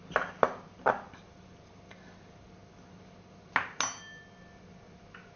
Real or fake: real